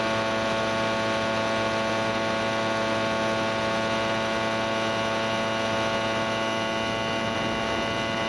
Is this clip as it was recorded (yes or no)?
yes